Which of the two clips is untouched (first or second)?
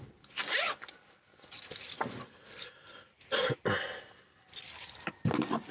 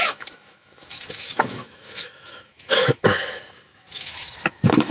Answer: first